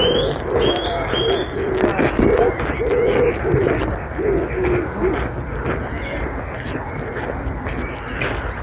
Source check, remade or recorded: recorded